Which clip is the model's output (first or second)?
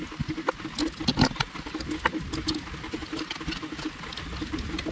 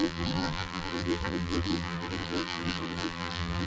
second